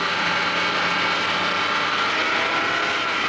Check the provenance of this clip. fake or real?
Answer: real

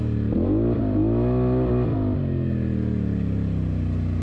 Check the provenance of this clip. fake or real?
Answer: real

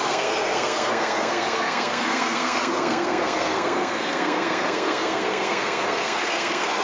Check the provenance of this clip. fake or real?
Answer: fake